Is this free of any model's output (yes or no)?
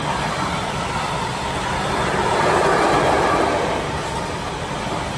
yes